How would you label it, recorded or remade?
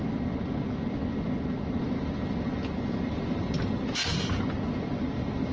recorded